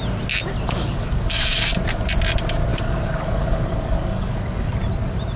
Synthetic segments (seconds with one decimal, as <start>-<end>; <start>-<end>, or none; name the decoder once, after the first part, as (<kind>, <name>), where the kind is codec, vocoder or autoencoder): 0.8-1.7 (codec, DAC); 2.7-4.7